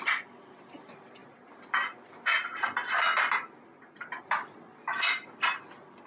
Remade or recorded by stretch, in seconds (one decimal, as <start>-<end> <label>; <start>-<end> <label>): 0.0-6.1 recorded